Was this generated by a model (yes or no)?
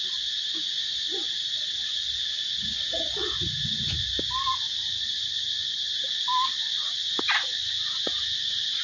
no